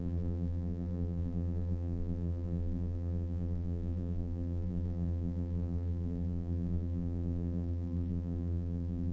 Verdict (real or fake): fake